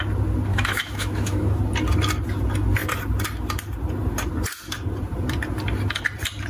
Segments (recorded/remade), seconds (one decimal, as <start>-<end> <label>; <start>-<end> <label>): 0.0-0.5 recorded; 0.5-1.6 remade; 1.6-6.5 recorded